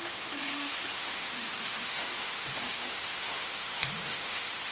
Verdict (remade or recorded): remade